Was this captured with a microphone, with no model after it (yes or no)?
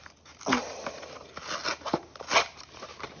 yes